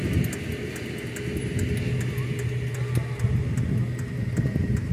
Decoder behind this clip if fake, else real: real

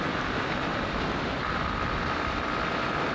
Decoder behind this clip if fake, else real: real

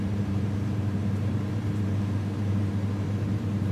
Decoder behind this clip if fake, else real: fake, vocoder, BigVGAN v2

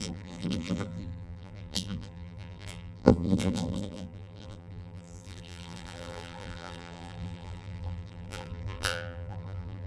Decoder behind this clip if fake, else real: fake, vocoder, BigVGAN v2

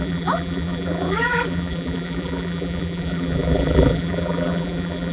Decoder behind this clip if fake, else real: fake, vocoder, BigVGAN v2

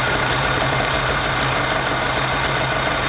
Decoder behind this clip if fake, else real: fake, vocoder, BigVGAN v2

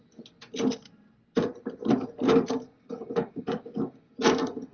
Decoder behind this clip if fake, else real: real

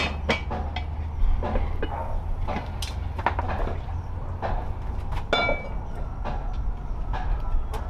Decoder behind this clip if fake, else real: real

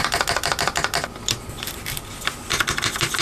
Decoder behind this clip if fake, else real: real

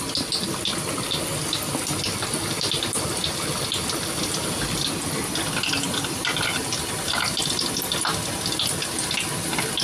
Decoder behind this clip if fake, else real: real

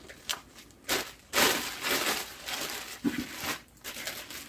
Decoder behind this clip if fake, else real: real